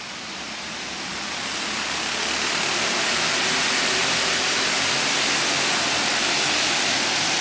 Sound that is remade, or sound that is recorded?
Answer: recorded